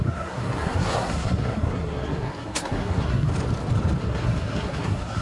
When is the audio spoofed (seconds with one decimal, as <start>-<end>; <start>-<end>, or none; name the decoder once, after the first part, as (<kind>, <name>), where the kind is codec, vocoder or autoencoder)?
0.0-3.3 (codec, SNAC); 4.0-5.2